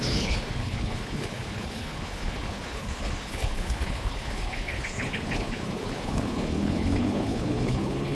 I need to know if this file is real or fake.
fake